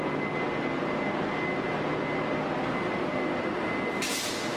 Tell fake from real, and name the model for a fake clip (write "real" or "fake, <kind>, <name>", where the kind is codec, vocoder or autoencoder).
real